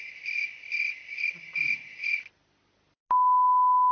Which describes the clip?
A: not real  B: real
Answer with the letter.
B